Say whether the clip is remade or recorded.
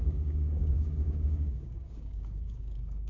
remade